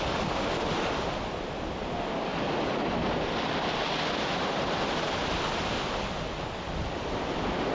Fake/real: real